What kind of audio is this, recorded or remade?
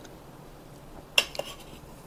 recorded